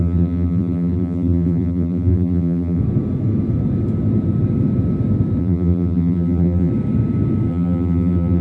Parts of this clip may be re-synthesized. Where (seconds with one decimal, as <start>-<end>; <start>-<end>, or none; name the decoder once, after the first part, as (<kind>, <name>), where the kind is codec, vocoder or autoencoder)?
0.0-2.8 (vocoder, BigVGAN v2); 5.4-6.7; 7.5-8.4